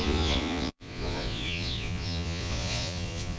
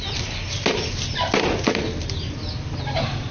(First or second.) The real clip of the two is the second